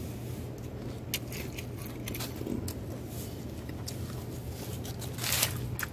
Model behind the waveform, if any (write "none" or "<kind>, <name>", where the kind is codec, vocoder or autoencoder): none